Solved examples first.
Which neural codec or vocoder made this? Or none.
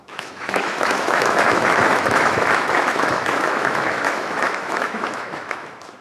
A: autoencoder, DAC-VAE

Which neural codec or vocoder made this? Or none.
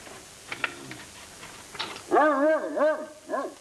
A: none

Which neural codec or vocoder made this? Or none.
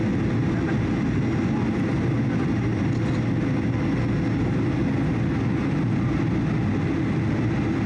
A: none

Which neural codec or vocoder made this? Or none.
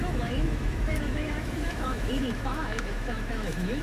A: autoencoder, DAC-VAE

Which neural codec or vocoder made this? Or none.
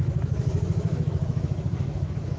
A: autoencoder, DAC-VAE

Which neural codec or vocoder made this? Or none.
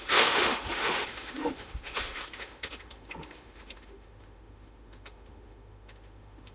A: autoencoder, DAC-VAE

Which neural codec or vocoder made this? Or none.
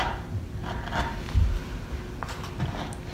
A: none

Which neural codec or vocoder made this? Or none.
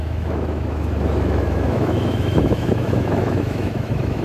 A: autoencoder, DAC-VAE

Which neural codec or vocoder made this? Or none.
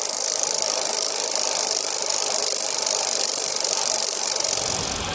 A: none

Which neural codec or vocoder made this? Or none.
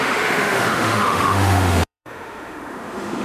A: autoencoder, DAC-VAE